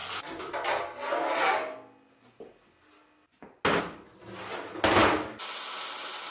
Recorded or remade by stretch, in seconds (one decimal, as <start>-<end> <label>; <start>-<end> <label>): 0.0-6.3 recorded